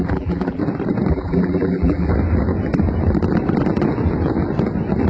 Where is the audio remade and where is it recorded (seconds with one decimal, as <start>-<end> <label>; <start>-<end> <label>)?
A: 0.0-0.6 remade; 0.6-1.1 recorded; 1.1-2.1 remade; 2.1-5.1 recorded